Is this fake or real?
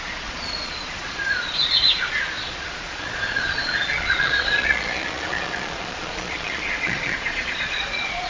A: fake